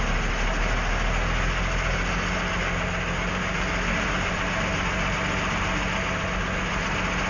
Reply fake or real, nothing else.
real